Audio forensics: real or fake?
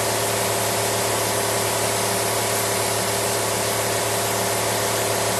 real